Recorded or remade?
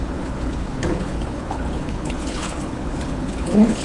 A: remade